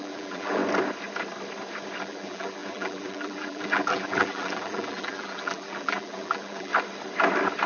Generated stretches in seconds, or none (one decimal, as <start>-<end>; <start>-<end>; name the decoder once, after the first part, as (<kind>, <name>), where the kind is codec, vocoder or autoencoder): 0.0-0.6 (vocoder, BigVGAN v2); 2.0-6.7